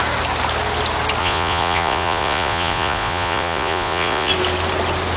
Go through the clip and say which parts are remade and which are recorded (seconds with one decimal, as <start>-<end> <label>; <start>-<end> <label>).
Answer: 0.0-1.2 recorded; 1.2-4.3 remade; 4.3-5.2 recorded